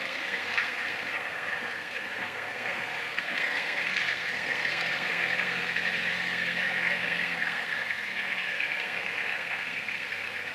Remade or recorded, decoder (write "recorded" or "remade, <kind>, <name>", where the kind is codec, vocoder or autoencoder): remade, codec, SNAC